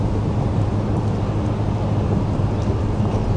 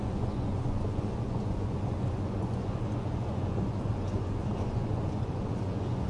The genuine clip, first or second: first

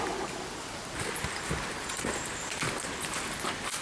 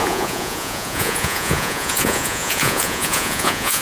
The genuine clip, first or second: first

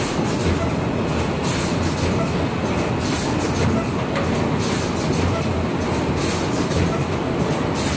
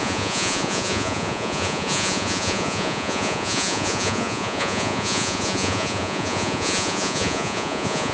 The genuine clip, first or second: first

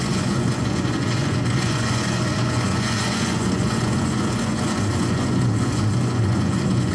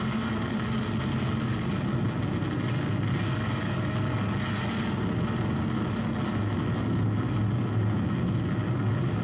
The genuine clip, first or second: second